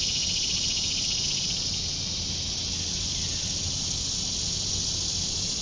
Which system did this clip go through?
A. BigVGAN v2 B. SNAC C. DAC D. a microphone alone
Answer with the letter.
D